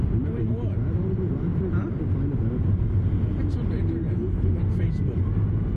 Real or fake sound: real